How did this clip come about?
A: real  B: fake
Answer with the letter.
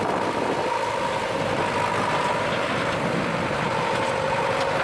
B